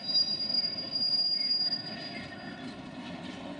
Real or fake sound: real